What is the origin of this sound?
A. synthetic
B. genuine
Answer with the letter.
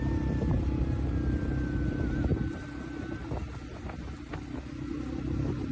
B